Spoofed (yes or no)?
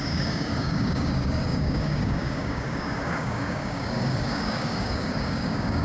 yes